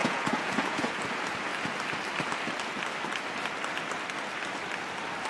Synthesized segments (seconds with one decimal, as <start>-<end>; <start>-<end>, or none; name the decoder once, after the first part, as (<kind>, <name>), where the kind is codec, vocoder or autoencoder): 0.0-0.9 (vocoder, Vocos)